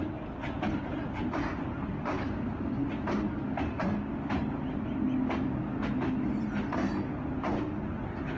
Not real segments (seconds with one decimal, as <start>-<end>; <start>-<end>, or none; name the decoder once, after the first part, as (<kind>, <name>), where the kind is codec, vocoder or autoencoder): none